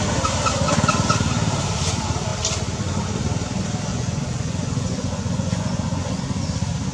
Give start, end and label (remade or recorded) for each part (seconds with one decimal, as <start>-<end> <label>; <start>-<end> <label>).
0.0-3.9 recorded; 3.9-6.2 remade; 6.2-6.9 recorded